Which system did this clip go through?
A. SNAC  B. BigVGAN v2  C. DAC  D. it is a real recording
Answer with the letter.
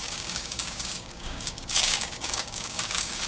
C